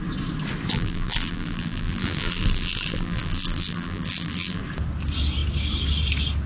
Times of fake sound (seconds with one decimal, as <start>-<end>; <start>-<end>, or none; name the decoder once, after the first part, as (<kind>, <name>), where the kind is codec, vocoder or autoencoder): 0.7-4.6 (vocoder, BigVGAN v2)